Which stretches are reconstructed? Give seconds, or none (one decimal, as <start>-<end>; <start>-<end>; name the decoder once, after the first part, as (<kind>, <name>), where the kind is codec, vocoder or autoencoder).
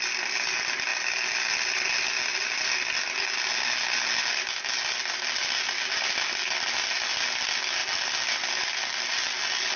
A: none